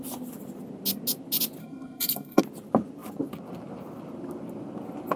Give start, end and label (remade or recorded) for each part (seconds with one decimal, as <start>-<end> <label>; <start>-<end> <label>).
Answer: 0.0-1.6 recorded; 1.6-2.4 remade; 2.4-5.2 recorded